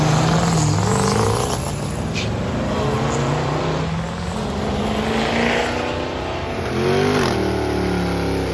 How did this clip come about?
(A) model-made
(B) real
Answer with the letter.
B